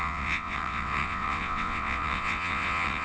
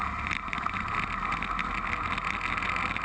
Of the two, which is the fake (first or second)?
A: first